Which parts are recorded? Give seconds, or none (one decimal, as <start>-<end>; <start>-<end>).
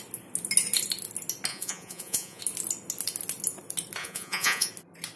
0.0-1.5; 2.4-4.0; 4.7-5.2